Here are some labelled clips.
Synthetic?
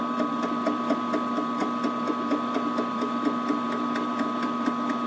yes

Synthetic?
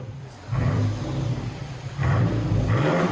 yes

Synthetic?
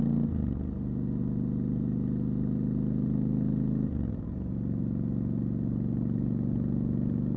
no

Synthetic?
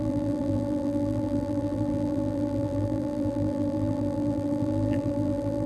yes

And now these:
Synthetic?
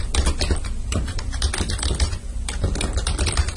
no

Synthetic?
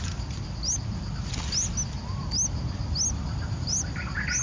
no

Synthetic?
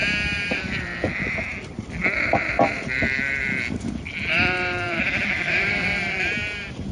yes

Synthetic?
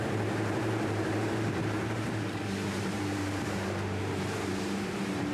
yes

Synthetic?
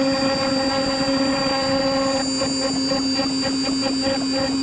no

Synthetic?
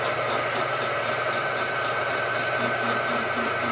yes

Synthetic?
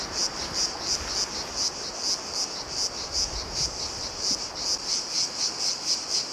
no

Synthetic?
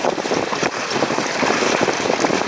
no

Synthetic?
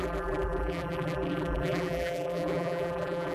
yes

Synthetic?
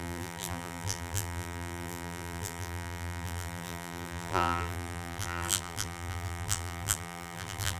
yes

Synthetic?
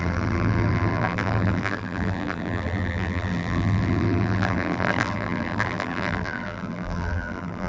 yes